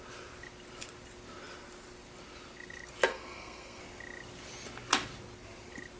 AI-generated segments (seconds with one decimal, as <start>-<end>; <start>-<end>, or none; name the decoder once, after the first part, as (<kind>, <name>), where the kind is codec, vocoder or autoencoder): 3.1-3.8 (codec, SNAC)